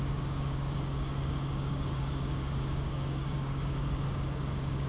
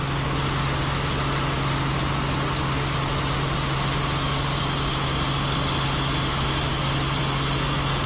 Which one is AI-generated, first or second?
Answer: first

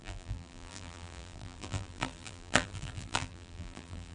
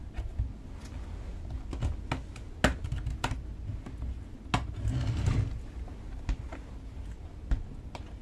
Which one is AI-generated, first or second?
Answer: first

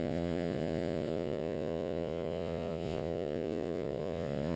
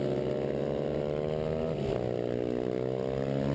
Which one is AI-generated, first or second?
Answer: first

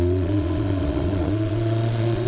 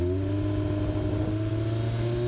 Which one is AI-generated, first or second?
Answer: first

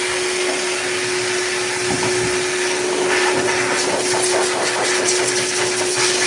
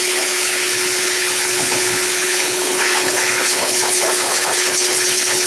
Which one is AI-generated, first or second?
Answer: second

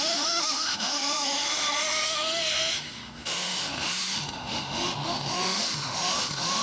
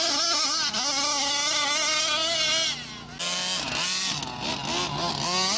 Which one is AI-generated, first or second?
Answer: first